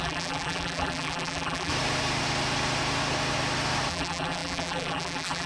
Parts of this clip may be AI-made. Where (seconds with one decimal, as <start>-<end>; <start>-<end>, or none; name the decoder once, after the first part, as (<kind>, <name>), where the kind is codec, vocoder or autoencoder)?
0.0-1.7 (vocoder, BigVGAN v2); 3.9-5.5